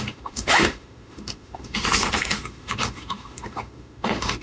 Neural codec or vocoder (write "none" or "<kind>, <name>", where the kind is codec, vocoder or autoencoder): autoencoder, DAC-VAE